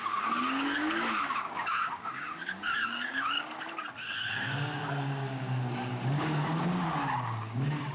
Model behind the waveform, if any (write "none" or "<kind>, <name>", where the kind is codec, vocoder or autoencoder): codec, DAC